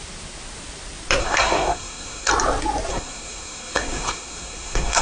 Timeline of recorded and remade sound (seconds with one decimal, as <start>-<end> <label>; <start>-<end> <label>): 0.0-1.2 recorded; 1.2-2.3 remade; 2.3-2.9 recorded; 2.9-5.0 remade